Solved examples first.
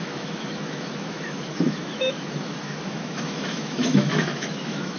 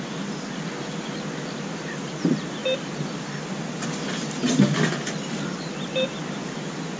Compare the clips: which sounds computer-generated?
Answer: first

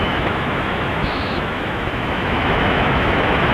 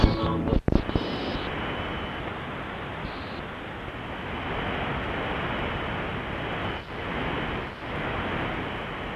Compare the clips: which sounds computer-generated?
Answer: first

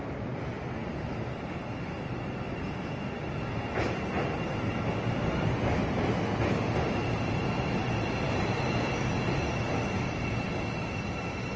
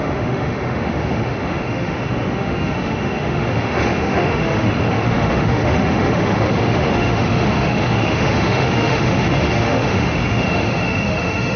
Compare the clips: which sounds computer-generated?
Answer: second